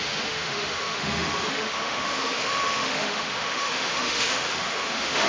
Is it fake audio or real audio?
fake